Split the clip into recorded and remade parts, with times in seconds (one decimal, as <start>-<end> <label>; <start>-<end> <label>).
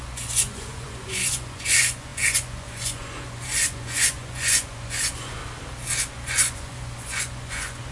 0.0-5.4 remade; 5.4-6.1 recorded; 6.1-7.9 remade